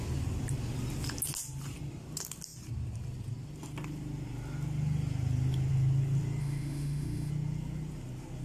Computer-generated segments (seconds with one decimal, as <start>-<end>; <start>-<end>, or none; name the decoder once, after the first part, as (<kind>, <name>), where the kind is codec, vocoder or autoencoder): 6.4-7.3 (autoencoder, DAC-VAE)